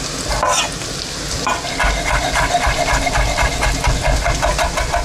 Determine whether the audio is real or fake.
real